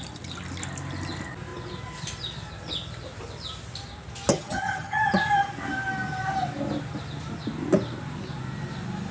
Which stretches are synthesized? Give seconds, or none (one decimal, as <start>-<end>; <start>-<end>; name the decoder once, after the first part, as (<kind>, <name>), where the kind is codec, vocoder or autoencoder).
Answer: 4.3-5.0 (vocoder, HiFi-GAN)